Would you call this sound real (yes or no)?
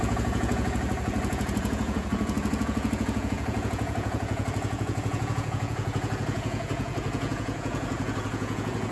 no